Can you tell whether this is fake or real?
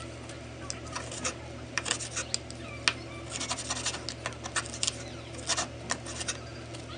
real